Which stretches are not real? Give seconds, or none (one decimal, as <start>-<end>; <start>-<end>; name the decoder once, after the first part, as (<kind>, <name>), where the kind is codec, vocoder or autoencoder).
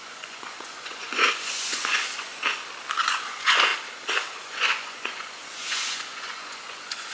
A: 0.0-2.3 (vocoder, Vocos); 3.0-3.7; 4.4-7.1